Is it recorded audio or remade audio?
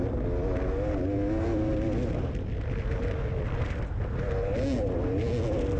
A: recorded